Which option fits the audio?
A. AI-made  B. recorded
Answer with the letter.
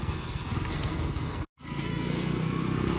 A